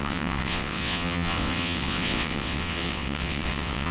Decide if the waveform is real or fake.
fake